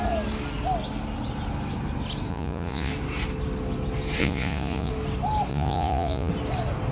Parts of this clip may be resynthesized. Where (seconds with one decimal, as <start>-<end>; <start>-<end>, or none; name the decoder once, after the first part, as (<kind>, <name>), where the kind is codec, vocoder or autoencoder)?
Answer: 2.3-2.9 (vocoder, Vocos); 4.2-4.9; 5.5-6.3